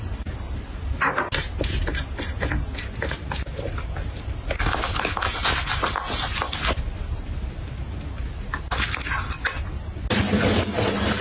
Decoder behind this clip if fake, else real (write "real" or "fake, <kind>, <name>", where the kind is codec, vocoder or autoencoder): real